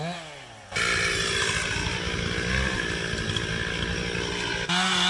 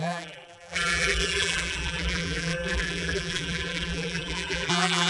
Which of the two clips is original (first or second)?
first